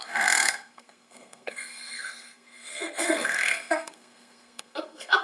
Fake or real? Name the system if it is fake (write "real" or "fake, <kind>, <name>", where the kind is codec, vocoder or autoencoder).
fake, codec, SNAC